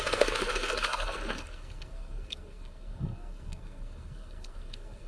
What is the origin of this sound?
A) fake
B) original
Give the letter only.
A